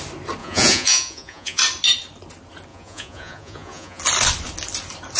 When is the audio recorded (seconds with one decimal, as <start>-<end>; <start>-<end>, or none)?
0.0-0.4; 1.6-2.7; 4.0-5.2